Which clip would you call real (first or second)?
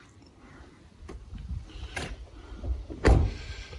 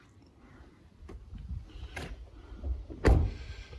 second